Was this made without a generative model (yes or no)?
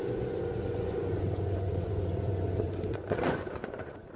no